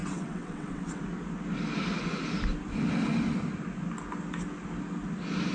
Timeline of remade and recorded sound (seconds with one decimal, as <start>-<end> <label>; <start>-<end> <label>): 0.0-1.0 remade; 1.0-5.5 recorded